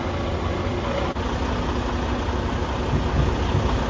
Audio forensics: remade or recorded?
recorded